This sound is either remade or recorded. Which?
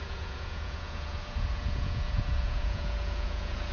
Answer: remade